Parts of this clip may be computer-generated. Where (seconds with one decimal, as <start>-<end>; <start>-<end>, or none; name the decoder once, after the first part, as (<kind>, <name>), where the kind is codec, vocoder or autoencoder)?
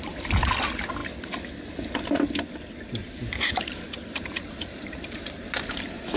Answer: 3.0-5.3 (vocoder, BigVGAN v2)